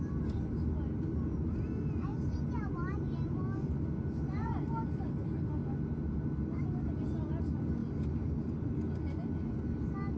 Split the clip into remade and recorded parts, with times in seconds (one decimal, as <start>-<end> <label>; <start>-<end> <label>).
0.0-10.2 recorded